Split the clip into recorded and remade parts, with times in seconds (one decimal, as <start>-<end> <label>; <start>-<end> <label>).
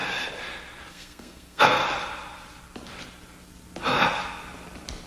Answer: 0.0-0.9 recorded; 0.9-1.8 remade; 1.8-5.1 recorded